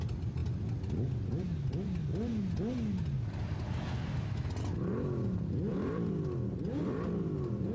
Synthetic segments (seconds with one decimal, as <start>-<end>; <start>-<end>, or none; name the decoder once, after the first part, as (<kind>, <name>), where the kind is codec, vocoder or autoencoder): none